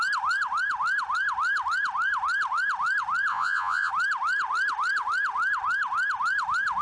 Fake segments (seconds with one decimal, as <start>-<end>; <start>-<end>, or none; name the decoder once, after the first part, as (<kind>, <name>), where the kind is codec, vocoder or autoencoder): 3.3-3.9 (vocoder, Vocos)